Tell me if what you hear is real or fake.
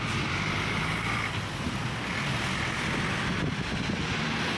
fake